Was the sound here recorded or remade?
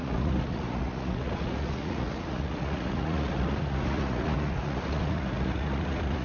remade